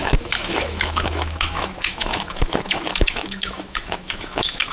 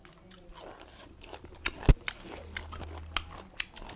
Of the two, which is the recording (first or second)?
second